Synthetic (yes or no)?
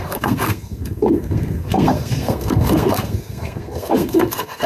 yes